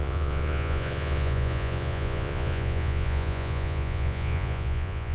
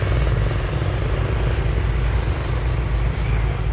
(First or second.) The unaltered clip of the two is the second